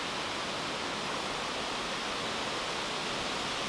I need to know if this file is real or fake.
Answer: real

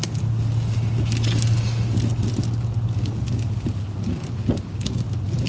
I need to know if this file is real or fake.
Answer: real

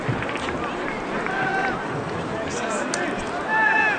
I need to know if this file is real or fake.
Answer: real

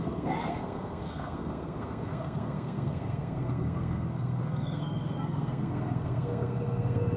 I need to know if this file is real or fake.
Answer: fake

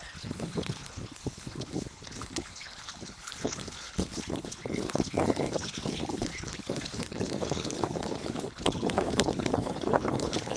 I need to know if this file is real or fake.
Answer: fake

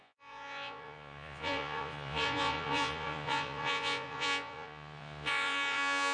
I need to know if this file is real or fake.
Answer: fake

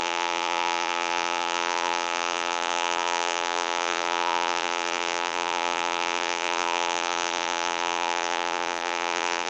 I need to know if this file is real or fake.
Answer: fake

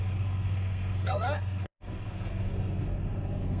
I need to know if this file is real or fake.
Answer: fake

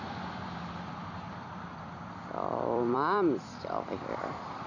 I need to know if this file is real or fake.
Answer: fake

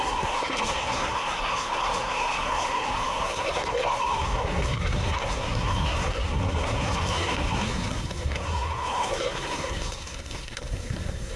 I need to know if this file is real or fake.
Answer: fake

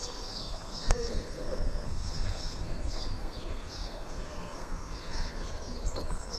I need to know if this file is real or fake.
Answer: fake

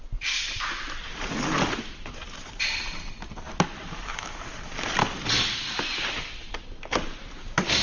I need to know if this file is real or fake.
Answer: real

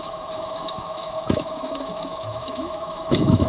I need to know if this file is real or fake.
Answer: fake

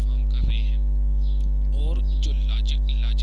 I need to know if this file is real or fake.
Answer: real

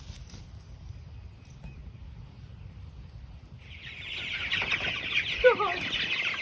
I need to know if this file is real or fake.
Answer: real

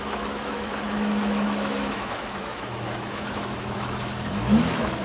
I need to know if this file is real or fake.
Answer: fake